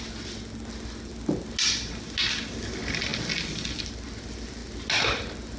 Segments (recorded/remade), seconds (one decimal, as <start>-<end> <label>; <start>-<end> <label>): 0.0-5.6 recorded